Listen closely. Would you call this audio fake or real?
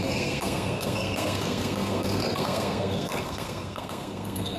fake